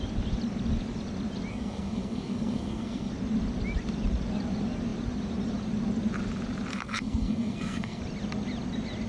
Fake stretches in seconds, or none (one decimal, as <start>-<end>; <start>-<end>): 1.5-3.1; 6.7-8.0